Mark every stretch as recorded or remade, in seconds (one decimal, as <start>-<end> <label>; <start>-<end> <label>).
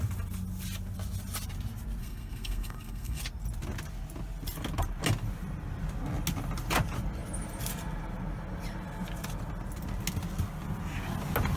0.0-2.0 recorded; 2.0-3.2 remade; 3.2-11.6 recorded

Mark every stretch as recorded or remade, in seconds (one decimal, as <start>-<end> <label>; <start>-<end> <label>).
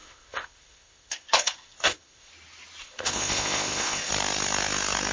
0.0-2.3 remade; 2.3-2.8 recorded; 2.8-4.1 remade; 4.1-5.1 recorded